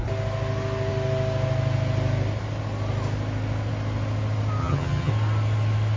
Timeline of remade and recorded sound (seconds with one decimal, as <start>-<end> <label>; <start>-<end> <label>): 0.0-4.6 recorded; 4.6-5.1 remade; 5.1-6.0 recorded